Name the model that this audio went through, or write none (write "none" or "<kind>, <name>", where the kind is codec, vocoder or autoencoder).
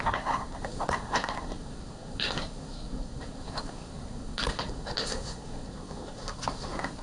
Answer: codec, SNAC